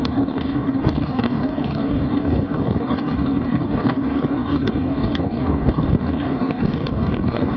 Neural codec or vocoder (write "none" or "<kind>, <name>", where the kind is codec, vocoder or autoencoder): codec, DAC